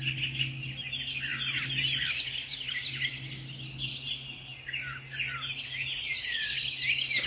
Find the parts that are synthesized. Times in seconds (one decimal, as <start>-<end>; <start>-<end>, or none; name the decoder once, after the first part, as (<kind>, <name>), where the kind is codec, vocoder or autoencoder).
none